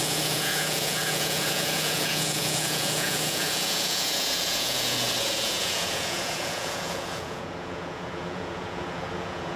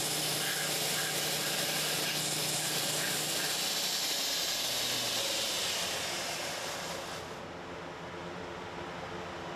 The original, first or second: second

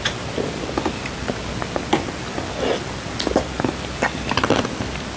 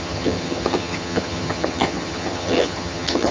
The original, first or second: first